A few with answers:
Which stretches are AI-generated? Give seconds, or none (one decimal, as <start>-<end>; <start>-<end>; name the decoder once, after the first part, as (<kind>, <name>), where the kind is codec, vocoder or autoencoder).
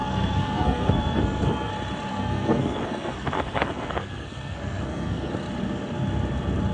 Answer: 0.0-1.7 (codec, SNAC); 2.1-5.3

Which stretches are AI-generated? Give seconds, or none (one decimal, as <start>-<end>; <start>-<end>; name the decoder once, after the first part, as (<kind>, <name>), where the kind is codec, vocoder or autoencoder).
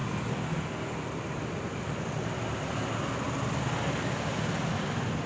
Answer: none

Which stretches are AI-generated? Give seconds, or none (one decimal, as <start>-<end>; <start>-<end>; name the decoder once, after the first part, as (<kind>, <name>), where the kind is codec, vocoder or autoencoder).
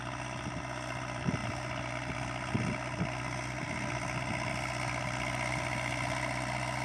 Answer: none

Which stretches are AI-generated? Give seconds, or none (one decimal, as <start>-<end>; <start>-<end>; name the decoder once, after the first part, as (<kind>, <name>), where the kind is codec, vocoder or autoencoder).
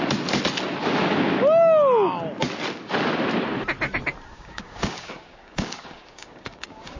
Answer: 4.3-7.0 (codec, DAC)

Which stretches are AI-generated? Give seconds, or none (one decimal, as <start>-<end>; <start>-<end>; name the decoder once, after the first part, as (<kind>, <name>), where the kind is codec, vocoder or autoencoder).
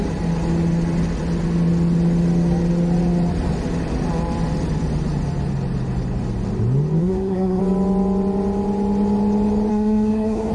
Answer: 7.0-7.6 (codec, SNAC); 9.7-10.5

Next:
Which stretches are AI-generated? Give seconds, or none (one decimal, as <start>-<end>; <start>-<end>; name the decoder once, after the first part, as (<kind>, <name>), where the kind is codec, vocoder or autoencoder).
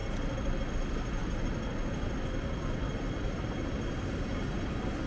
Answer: none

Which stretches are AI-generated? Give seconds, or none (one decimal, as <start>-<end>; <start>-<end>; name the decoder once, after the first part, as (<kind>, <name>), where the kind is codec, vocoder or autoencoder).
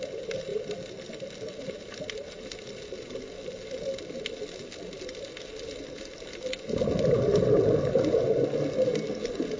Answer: 0.5-1.6 (vocoder, BigVGAN v2); 8.9-9.6